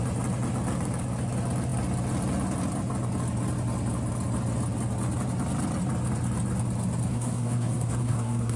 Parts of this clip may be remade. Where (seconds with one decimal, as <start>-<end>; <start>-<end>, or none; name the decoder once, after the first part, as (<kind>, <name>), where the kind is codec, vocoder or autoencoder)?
7.1-8.6 (codec, SNAC)